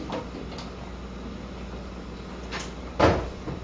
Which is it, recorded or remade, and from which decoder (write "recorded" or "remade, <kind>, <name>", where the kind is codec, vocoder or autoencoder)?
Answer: recorded